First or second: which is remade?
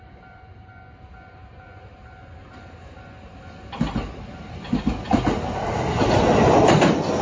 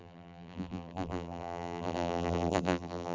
second